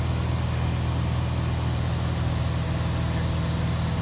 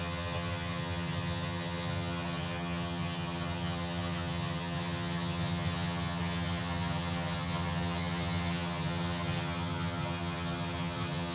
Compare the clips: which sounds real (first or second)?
first